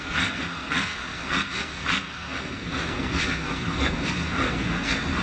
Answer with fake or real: fake